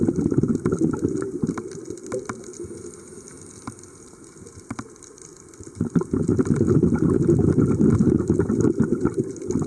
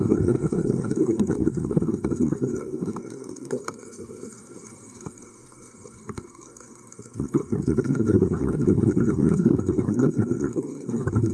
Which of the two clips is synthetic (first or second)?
second